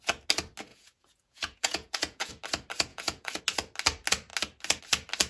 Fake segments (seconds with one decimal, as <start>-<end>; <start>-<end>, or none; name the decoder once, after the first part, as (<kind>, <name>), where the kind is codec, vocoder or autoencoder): 0.7-2.3 (vocoder, Vocos); 2.9-3.4